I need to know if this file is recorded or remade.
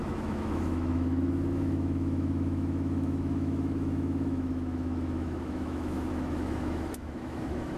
remade